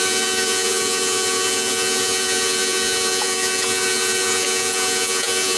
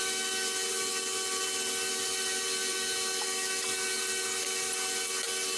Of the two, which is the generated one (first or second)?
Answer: first